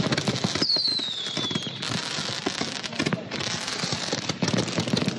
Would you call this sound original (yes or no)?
yes